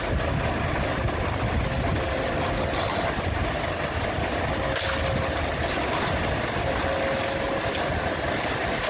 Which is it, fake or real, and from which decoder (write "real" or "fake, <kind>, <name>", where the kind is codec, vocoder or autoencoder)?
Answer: real